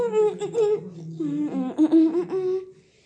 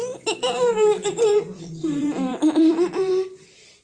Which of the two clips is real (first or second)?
first